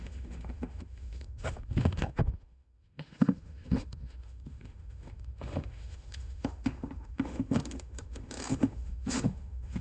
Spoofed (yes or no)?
yes